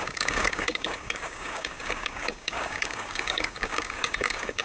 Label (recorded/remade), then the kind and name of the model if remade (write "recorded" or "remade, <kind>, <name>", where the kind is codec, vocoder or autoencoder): remade, codec, DAC